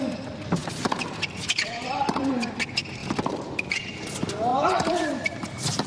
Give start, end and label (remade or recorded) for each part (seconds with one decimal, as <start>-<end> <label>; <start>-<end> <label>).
0.0-0.6 recorded; 0.6-2.5 remade; 2.5-3.0 recorded; 3.0-3.8 remade; 3.8-4.5 recorded; 4.5-5.4 remade; 5.4-5.9 recorded